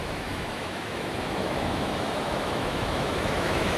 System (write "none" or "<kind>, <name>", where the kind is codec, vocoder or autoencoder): autoencoder, DAC-VAE